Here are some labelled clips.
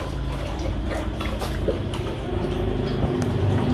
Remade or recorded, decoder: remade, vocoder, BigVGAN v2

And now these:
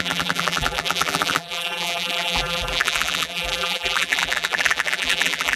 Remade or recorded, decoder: remade, vocoder, BigVGAN v2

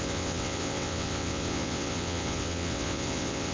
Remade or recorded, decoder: remade, vocoder, WaveNeXt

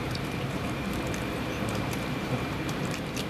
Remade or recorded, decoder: remade, vocoder, BigVGAN v2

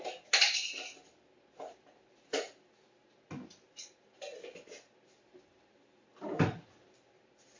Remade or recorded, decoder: recorded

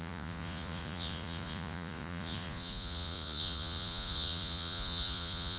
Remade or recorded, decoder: remade, vocoder, Vocos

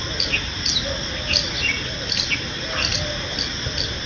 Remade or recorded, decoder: recorded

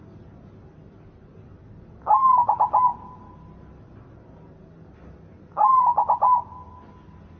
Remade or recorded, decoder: recorded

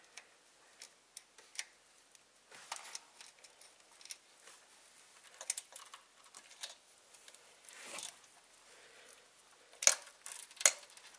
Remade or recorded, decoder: recorded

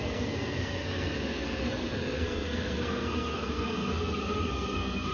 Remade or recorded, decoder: remade, codec, SNAC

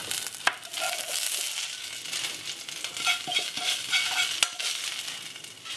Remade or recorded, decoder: recorded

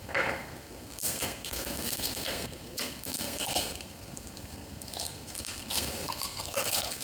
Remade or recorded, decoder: remade, codec, SNAC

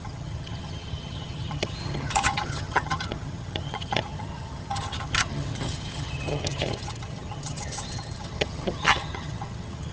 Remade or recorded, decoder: remade, vocoder, HiFi-GAN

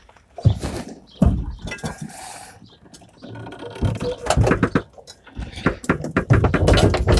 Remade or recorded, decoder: recorded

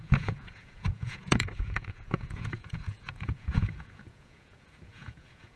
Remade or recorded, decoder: remade, vocoder, Vocos